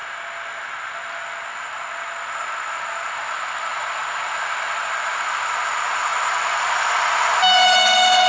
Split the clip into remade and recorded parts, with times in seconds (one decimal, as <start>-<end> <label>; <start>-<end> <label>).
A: 0.0-8.3 recorded

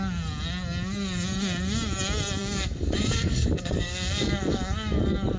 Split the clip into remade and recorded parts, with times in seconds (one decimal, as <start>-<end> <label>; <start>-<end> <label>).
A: 0.0-2.4 recorded; 2.4-5.4 remade

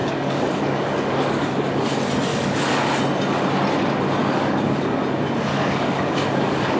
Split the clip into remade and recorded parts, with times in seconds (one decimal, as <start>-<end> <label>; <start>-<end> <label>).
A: 0.0-1.9 remade; 1.9-2.3 recorded; 2.3-3.0 remade; 3.0-4.2 recorded; 4.2-5.0 remade; 5.0-5.5 recorded; 5.5-6.8 remade

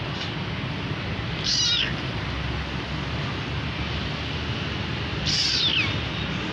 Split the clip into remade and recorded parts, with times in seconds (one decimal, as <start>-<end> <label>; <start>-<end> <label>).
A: 0.0-6.5 recorded

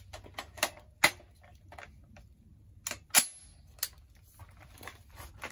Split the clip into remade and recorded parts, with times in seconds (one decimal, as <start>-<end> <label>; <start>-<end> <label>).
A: 0.0-5.5 recorded

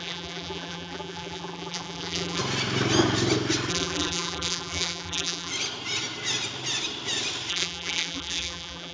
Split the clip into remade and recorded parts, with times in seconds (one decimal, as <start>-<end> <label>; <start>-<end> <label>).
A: 0.0-2.4 remade; 2.4-3.7 recorded; 3.7-5.5 remade; 5.5-7.5 recorded; 7.5-8.9 remade